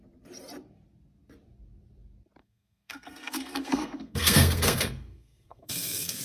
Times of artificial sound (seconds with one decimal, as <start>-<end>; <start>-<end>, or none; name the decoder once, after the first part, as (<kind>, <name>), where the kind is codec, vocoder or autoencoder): 2.4-6.2 (codec, SNAC)